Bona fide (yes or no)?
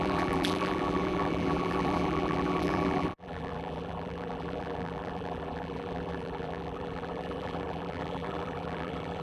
no